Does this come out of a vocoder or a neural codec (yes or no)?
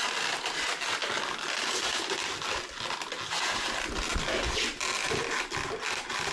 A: no